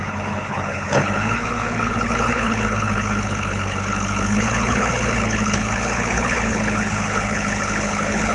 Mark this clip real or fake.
fake